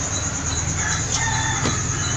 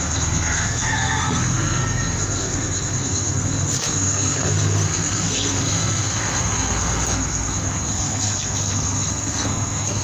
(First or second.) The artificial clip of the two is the second